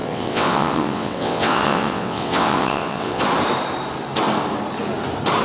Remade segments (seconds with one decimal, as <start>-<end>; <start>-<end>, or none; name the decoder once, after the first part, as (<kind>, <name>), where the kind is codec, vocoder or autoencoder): 0.0-3.2 (vocoder, WaveNeXt)